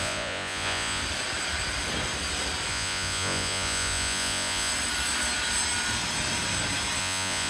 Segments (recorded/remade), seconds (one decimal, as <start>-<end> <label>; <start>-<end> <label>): 0.0-1.0 remade; 1.0-2.7 recorded; 2.7-4.7 remade; 4.7-7.0 recorded; 7.0-7.5 remade